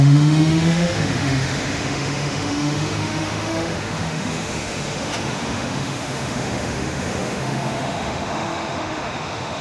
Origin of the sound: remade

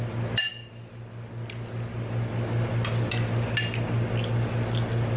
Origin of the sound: recorded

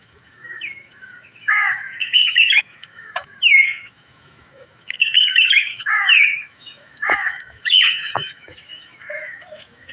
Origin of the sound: remade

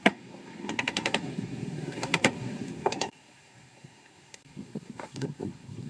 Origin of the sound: remade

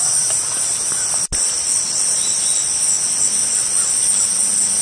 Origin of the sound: recorded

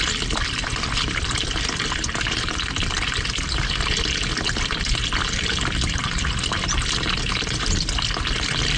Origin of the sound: recorded